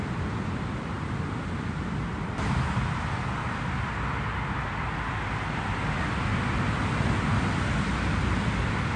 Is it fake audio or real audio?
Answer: real